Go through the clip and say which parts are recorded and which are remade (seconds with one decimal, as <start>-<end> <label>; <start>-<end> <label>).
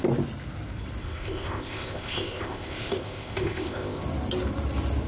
0.0-1.0 recorded; 1.0-4.0 remade; 4.0-5.1 recorded